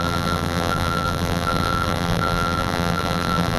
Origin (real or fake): fake